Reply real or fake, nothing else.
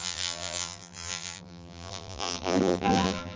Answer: fake